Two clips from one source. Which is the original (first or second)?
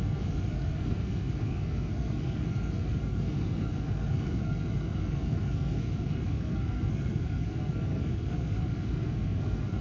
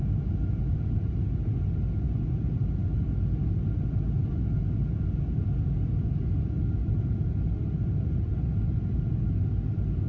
second